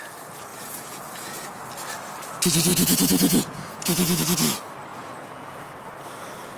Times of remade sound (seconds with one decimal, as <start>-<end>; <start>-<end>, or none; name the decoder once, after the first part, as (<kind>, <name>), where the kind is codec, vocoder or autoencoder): 0.5-1.6 (vocoder, Vocos); 2.7-4.2; 4.9-5.7